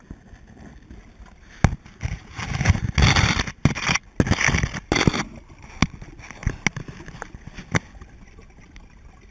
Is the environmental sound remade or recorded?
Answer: recorded